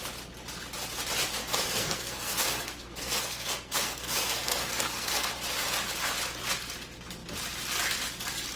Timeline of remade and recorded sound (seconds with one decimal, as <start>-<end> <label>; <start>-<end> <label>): 0.0-1.4 recorded; 1.4-5.3 remade; 5.3-8.6 recorded